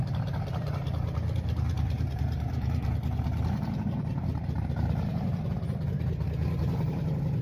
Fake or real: fake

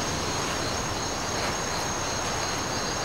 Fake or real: real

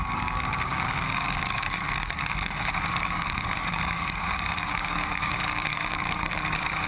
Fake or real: fake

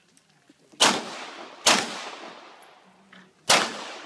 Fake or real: real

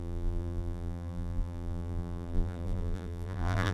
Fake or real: fake